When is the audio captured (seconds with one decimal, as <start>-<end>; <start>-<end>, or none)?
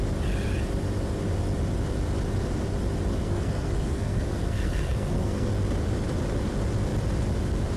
0.0-3.2; 5.5-7.8